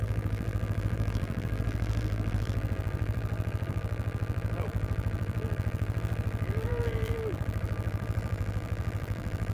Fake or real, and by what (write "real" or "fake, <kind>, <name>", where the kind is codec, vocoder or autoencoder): fake, vocoder, BigVGAN v2